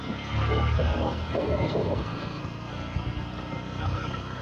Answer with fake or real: fake